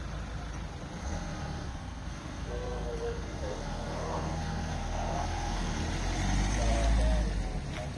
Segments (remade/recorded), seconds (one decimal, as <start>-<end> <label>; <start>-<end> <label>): 0.0-1.0 recorded; 1.0-5.8 remade; 5.8-8.0 recorded